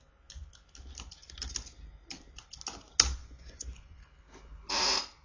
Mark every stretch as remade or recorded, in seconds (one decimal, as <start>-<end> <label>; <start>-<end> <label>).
0.0-3.2 recorded; 3.2-4.0 remade; 4.0-5.2 recorded